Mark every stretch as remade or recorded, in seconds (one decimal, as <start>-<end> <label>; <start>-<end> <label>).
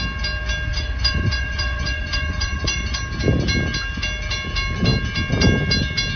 0.0-0.7 recorded; 0.7-3.0 remade; 3.0-6.2 recorded